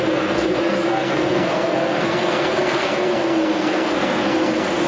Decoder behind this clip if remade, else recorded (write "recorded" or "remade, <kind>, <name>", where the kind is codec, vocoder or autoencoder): remade, codec, SNAC